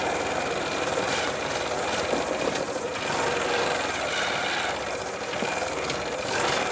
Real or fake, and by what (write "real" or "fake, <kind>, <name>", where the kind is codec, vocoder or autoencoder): real